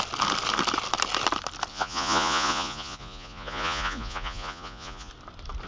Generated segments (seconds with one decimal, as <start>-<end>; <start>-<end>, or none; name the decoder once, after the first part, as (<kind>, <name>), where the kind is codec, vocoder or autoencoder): 1.7-5.1 (vocoder, Vocos)